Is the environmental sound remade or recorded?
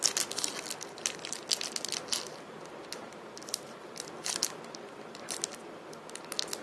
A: recorded